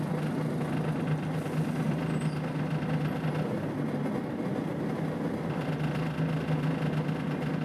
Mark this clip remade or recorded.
recorded